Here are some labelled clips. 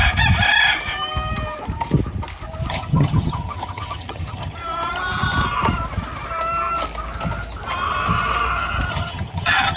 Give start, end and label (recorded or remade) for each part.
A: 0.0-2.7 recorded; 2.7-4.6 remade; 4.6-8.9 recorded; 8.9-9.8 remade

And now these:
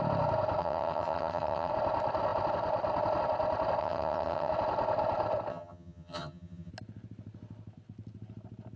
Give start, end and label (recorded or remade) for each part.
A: 0.0-0.6 recorded; 0.6-1.7 remade; 1.7-3.8 recorded; 3.8-4.5 remade; 4.5-5.5 recorded; 5.5-6.7 remade; 6.7-8.8 recorded

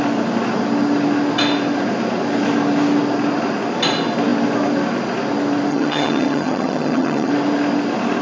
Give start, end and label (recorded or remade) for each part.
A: 0.0-5.7 recorded; 5.7-7.3 remade; 7.3-8.2 recorded

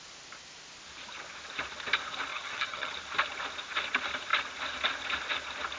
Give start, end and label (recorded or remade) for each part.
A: 0.0-2.3 recorded; 2.3-2.9 remade; 2.9-5.8 recorded

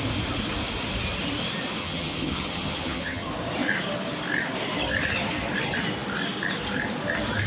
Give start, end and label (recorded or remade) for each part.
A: 0.0-1.8 recorded; 1.8-3.3 remade; 3.3-7.5 recorded